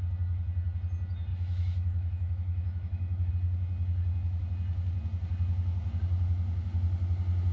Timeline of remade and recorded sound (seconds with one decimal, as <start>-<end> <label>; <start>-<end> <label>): 0.0-1.3 recorded; 1.3-3.3 remade; 3.3-7.5 recorded